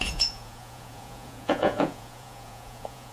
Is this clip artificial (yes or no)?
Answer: yes